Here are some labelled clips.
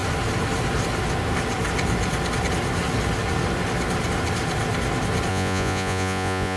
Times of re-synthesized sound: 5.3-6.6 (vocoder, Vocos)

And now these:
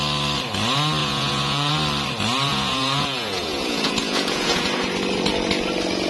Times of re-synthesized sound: 1.0-1.7 (vocoder, Vocos); 2.5-4.6

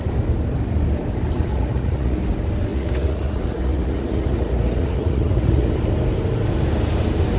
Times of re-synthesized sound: 1.5-2.2 (vocoder, Vocos); 2.7-5.7